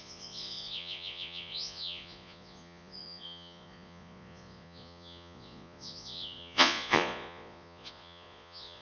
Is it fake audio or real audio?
fake